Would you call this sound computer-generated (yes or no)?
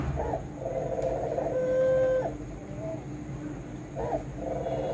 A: no